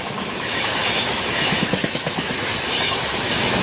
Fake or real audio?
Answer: fake